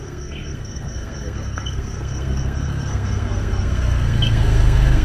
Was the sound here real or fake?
fake